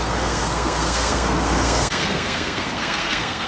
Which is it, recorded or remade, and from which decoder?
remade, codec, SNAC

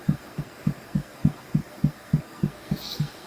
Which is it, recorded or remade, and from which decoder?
remade, codec, SNAC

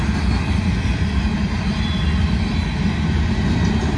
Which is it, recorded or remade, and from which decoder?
recorded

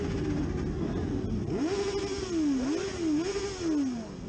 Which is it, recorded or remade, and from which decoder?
recorded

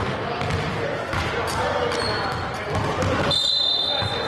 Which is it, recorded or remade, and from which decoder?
recorded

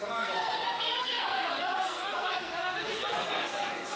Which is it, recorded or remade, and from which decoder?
remade, codec, SNAC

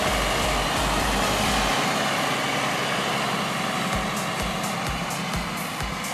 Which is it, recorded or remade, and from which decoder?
recorded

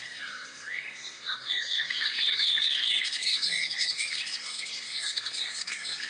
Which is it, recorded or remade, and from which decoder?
remade, codec, SNAC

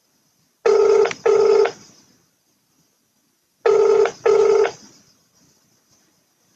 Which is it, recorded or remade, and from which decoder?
recorded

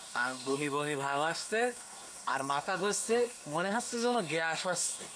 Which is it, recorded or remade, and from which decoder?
remade, codec, SNAC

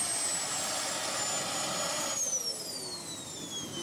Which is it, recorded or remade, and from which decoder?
recorded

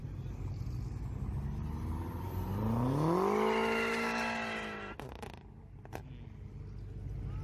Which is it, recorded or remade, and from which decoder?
recorded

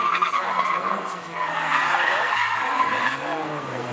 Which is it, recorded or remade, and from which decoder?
remade, codec, SNAC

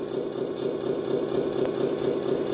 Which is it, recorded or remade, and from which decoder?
recorded